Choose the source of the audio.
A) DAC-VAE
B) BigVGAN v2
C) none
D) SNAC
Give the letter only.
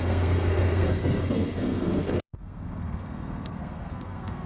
D